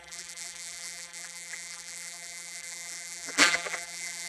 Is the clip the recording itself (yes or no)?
no